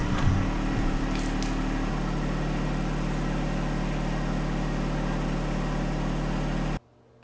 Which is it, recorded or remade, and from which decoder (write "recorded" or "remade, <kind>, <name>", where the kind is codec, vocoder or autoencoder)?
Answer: recorded